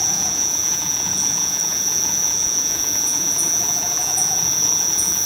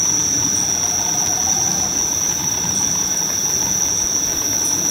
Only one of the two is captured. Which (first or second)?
second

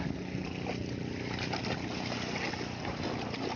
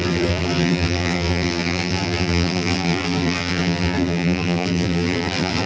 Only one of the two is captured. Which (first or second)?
first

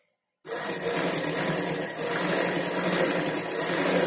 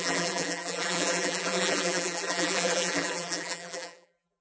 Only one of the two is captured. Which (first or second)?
first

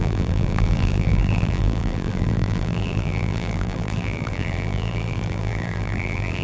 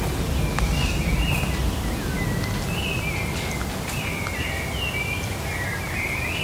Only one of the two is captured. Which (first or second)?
second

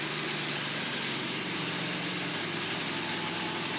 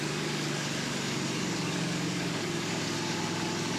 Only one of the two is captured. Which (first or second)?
first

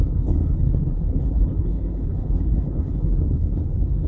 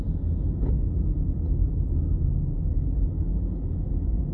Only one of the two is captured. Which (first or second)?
second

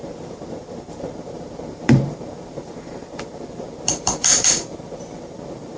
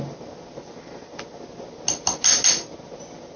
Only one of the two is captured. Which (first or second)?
second